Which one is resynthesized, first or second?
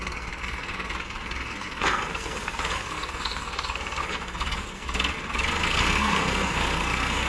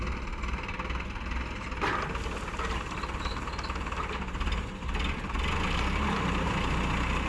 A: first